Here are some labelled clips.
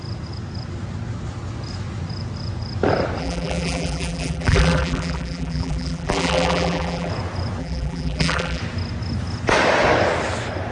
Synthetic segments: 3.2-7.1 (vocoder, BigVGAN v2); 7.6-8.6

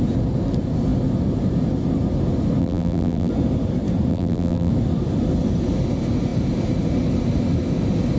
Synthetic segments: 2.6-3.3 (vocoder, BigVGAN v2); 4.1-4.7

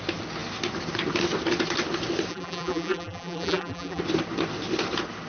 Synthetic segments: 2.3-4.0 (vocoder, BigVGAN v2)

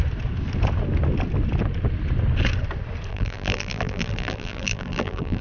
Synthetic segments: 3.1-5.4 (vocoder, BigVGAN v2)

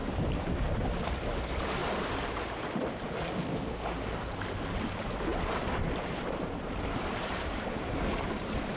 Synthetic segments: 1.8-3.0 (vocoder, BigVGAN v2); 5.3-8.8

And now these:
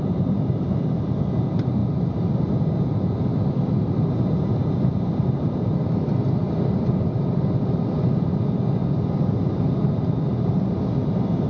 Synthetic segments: 0.0-1.8 (vocoder, BigVGAN v2); 3.2-4.6; 5.2-11.5